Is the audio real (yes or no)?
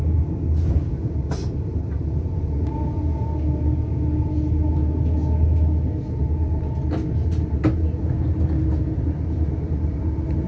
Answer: yes